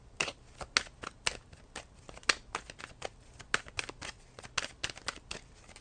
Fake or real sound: real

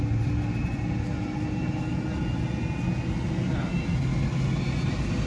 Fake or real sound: real